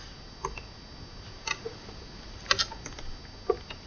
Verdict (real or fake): real